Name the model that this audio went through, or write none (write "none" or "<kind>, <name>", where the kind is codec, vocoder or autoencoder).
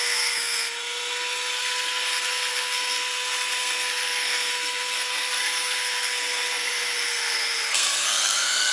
codec, SNAC